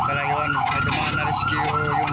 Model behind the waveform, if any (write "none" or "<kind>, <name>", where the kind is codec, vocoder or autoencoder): none